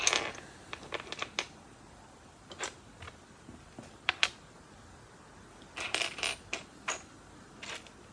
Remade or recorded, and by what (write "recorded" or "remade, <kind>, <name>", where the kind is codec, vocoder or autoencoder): recorded